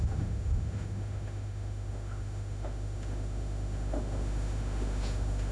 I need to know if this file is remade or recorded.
remade